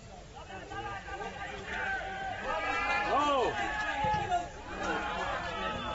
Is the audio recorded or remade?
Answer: recorded